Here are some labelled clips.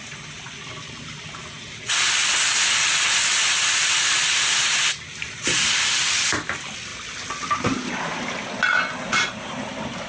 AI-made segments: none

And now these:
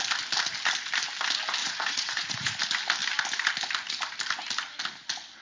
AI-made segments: 1.6-2.6 (vocoder, Vocos)

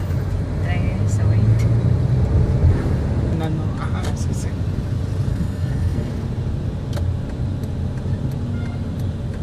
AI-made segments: 5.3-6.1 (codec, SNAC)

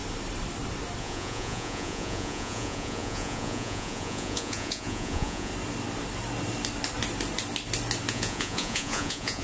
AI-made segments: 1.0-5.5 (vocoder, Vocos); 8.1-9.4